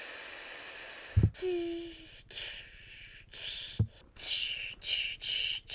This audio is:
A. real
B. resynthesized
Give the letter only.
A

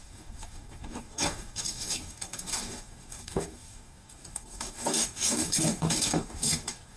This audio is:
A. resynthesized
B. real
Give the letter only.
A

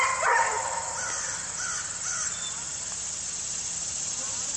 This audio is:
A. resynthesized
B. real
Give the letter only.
B